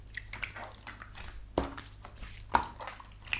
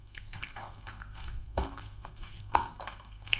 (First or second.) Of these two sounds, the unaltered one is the first